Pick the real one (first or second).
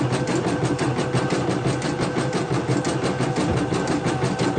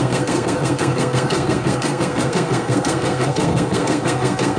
first